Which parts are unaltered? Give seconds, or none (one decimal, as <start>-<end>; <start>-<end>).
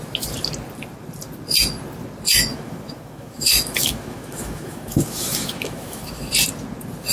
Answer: 0.0-2.5; 6.3-7.1